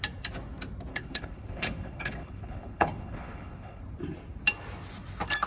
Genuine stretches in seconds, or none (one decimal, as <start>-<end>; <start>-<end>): 0.0-0.9; 3.8-5.5